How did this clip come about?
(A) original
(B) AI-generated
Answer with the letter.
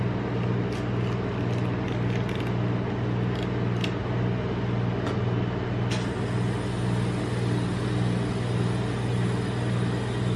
A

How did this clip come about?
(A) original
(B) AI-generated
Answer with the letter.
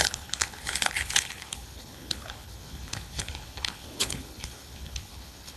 B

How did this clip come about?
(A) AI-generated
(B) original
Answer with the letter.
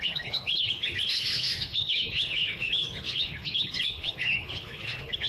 A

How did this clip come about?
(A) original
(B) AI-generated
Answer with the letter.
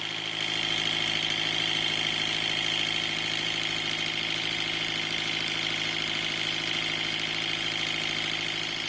A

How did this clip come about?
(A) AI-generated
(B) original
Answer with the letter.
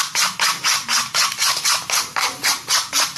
B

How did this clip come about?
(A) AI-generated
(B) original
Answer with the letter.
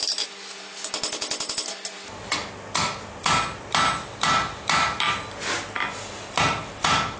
B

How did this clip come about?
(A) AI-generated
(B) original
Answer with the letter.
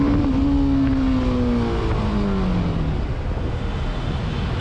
B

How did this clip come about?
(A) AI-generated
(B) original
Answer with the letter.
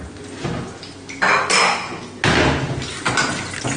B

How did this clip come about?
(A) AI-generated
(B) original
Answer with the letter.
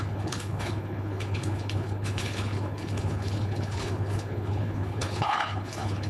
A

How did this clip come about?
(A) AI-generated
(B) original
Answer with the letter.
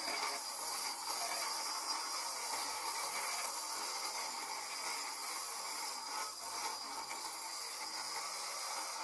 B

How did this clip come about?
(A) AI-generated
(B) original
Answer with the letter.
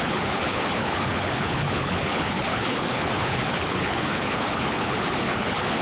A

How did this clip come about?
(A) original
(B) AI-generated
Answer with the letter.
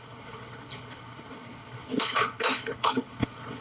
B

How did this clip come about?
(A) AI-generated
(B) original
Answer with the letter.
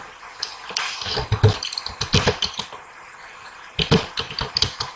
B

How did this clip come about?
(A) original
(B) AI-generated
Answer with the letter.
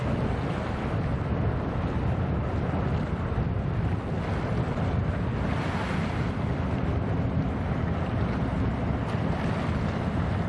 A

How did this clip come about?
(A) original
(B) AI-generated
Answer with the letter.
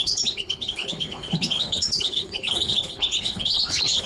B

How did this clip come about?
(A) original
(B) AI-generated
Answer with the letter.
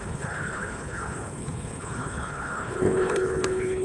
B